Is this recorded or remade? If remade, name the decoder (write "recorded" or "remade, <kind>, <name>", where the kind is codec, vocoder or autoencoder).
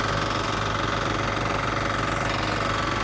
recorded